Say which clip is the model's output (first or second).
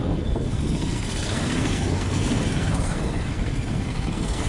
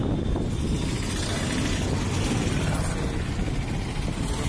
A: first